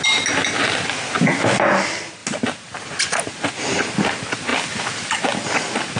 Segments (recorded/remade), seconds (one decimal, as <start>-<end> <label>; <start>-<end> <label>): 0.0-6.0 recorded